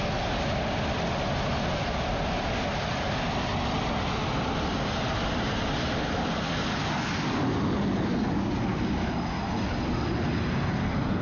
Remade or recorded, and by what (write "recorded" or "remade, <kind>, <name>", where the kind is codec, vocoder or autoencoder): recorded